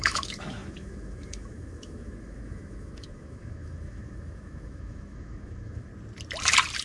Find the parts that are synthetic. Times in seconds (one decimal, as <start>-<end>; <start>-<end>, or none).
0.0-5.9